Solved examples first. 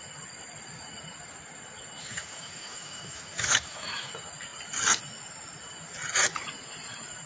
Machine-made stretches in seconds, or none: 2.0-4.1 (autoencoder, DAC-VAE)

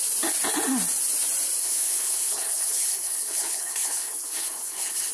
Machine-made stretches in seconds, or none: 1.6-5.1 (codec, HILCodec)

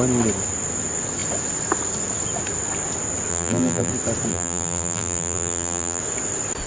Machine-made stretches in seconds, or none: 3.3-3.9 (vocoder, BigVGAN v2); 4.3-6.0